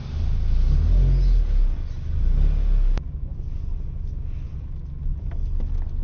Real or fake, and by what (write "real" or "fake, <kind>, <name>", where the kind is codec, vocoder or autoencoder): real